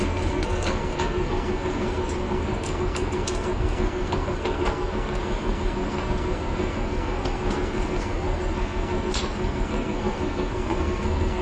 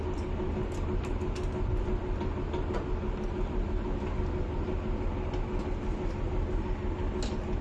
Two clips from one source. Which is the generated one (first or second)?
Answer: first